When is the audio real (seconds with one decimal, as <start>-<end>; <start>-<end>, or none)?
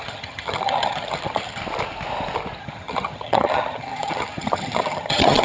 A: 1.6-2.6